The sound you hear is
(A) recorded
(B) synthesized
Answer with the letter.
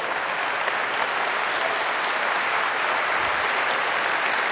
A